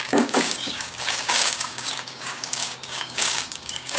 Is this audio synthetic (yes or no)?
yes